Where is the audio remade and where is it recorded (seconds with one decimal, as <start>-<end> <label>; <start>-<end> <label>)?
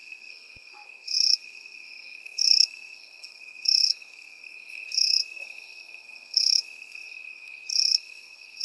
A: 0.0-8.6 remade